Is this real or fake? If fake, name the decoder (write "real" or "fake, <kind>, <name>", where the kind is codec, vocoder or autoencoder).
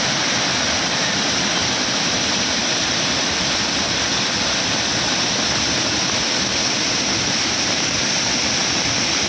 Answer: real